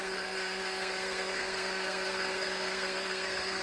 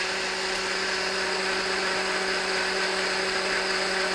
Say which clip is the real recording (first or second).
second